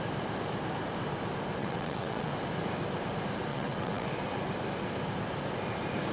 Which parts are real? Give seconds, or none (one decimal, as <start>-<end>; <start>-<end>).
0.0-1.6; 2.3-3.5; 4.1-6.1